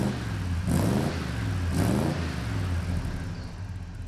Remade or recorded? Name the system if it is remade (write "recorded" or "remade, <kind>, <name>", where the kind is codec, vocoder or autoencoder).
recorded